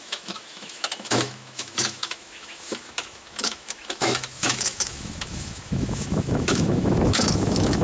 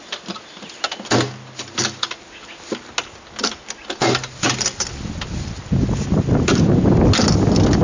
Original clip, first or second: second